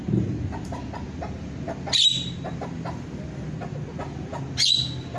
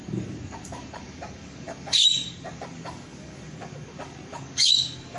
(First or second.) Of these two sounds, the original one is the first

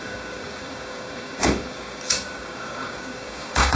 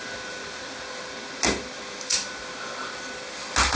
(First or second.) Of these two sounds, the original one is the second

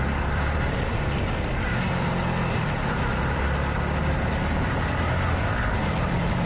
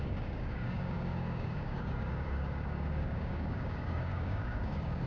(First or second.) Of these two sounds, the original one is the first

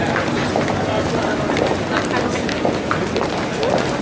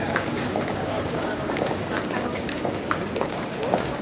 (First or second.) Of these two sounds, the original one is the first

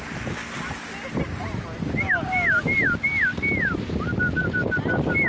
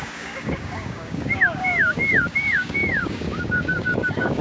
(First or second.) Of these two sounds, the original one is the first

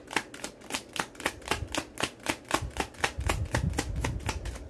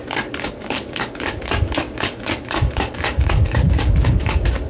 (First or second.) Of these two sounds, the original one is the first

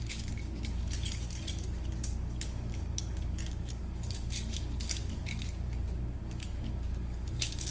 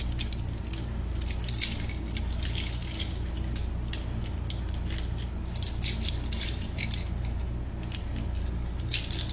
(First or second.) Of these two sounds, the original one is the second